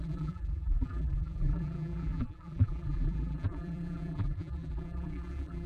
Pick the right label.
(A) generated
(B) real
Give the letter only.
A